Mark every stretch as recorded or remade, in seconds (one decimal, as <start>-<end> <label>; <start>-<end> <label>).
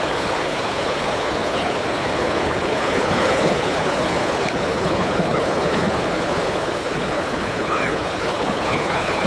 0.0-9.3 remade